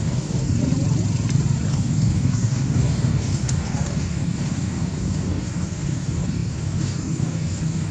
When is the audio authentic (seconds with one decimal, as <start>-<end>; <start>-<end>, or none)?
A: 0.6-1.7

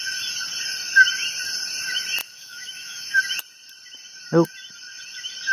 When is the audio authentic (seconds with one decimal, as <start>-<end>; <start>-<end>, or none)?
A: 0.0-2.2; 3.2-5.5

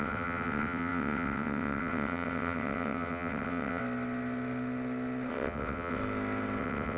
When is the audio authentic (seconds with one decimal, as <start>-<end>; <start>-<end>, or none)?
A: 3.8-5.3; 6.0-6.6

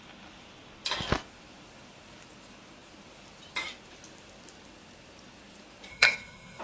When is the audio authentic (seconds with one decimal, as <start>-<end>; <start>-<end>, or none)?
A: 0.0-5.9

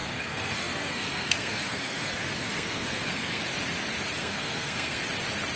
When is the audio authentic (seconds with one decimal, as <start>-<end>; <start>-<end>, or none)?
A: 3.4-4.2; 5.0-5.6

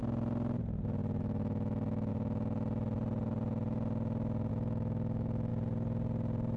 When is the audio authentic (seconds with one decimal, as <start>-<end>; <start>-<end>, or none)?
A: 0.0-1.2; 2.1-4.5; 5.5-6.6

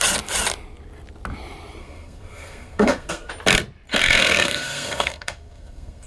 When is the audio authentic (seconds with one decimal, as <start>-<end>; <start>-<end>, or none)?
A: 0.0-1.8; 3.3-3.9